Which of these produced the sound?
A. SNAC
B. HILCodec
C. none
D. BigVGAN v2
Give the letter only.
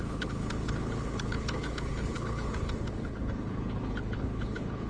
B